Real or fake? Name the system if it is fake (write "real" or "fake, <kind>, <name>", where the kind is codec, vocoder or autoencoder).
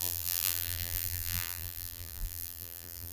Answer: fake, vocoder, BigVGAN v2